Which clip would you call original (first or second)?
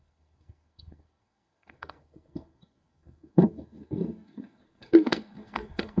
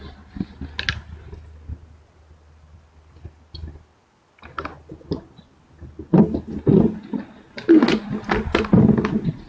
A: second